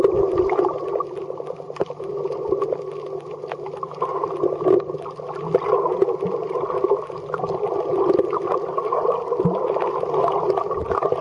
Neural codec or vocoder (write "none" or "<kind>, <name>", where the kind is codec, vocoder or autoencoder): none